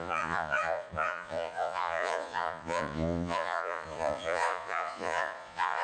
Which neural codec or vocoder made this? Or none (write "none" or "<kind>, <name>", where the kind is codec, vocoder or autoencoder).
vocoder, Vocos